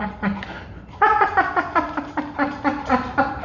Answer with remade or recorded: remade